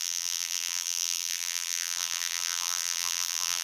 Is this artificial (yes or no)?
yes